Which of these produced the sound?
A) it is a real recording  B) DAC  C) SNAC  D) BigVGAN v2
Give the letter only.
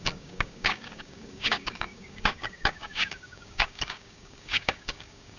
B